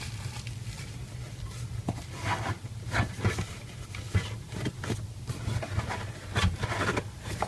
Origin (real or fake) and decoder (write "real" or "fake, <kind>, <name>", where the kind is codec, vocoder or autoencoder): real